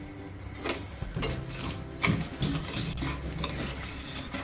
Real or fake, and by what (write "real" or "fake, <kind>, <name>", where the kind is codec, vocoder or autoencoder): real